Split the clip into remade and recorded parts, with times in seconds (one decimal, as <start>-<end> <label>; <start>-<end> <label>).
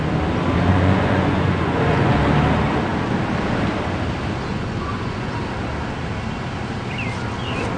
0.0-0.7 recorded; 0.7-2.2 remade; 2.2-4.5 recorded; 4.5-5.3 remade; 5.3-7.8 recorded